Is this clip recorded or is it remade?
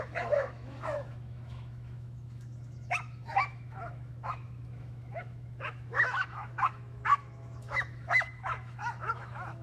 remade